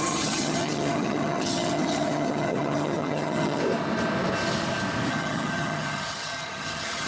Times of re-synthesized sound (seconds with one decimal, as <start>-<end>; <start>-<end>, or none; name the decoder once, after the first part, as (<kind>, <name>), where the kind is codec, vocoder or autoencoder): 0.0-3.6 (vocoder, HiFi-GAN); 5.1-7.1